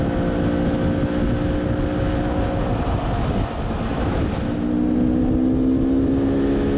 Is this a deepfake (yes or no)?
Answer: no